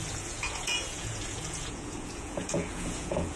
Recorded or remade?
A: remade